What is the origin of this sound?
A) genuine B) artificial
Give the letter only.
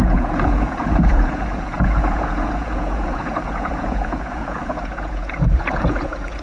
B